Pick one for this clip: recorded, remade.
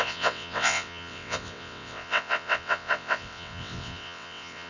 remade